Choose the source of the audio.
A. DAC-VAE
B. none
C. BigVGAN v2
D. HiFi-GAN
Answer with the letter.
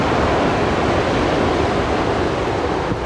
B